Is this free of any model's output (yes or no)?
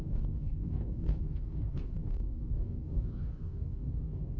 no